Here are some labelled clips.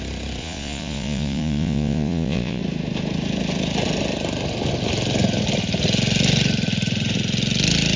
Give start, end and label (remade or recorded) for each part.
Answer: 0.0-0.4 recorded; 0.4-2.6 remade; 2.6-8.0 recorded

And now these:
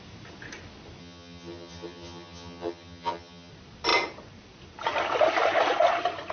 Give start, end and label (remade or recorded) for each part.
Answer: 0.0-1.0 recorded; 1.0-3.5 remade; 3.5-6.3 recorded

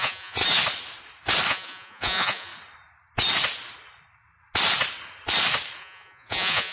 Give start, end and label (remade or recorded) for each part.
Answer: 0.0-0.4 remade; 0.4-1.5 recorded; 1.5-2.5 remade; 2.5-5.8 recorded; 5.8-6.7 remade

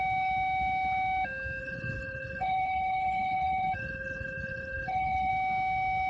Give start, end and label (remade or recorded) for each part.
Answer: 0.0-1.6 recorded; 1.6-5.3 remade; 5.3-6.1 recorded

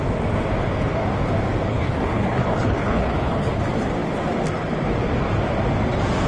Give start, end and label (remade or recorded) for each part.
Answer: 0.0-1.7 recorded; 1.7-3.6 remade; 3.6-6.3 recorded

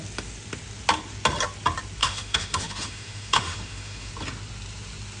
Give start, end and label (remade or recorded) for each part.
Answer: 0.0-2.0 recorded; 2.0-4.1 remade; 4.1-5.2 recorded

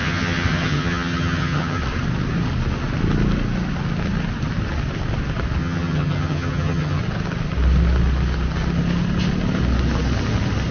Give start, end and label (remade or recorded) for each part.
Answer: 0.0-1.8 remade; 1.8-5.6 recorded; 5.6-7.0 remade; 7.0-10.7 recorded